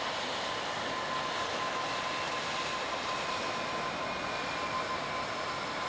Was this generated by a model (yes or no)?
no